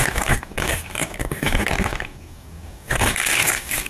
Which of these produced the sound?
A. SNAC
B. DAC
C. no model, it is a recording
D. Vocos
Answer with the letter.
B